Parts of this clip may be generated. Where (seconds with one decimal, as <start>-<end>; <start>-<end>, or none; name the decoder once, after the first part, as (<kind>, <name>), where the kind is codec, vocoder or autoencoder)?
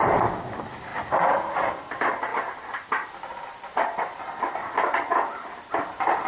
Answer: none